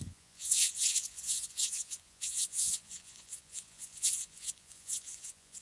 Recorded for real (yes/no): no